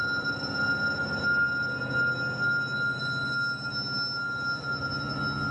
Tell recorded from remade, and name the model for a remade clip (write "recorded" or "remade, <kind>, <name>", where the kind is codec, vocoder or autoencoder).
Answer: recorded